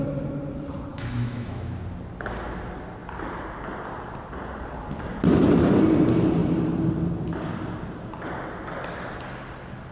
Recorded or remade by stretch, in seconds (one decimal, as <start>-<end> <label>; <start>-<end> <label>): 0.0-0.9 recorded; 0.9-1.8 remade; 1.8-9.9 recorded